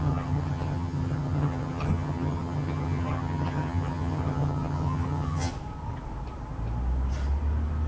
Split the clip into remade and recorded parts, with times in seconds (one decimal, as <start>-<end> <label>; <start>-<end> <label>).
0.0-5.5 remade; 5.5-7.9 recorded